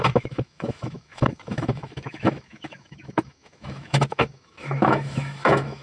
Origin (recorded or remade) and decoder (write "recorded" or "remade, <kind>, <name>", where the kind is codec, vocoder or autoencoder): remade, autoencoder, DAC-VAE